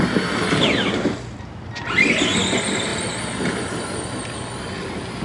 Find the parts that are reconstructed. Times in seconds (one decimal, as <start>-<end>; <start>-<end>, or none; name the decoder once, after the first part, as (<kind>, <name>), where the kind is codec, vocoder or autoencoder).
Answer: none